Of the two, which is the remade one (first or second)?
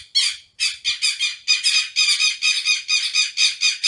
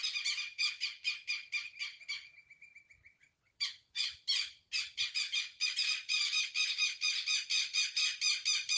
second